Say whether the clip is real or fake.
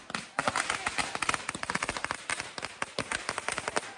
real